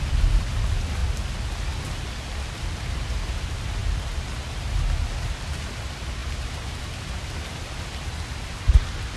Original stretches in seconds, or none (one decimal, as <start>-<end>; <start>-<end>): 0.0-9.2